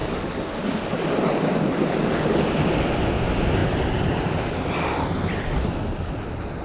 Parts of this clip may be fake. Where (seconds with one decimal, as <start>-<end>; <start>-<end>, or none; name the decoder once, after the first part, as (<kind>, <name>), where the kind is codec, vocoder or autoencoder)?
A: none